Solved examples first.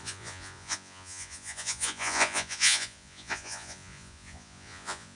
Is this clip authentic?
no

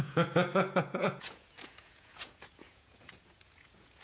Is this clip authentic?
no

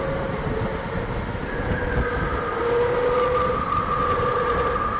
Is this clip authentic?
yes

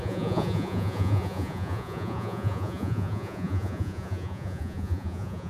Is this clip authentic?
no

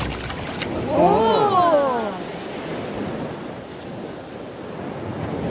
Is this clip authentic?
yes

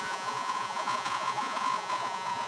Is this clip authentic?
no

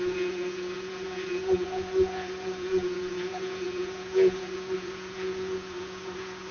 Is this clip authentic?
no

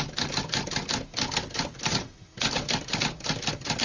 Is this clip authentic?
yes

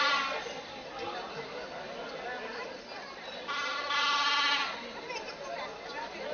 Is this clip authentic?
yes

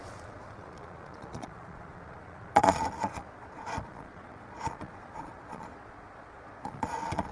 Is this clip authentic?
no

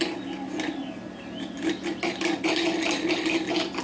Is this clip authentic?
yes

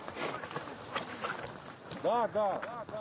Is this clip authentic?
yes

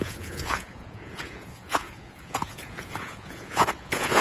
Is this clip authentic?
no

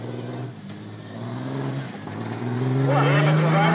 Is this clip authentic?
yes